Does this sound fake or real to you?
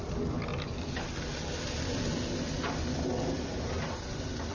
real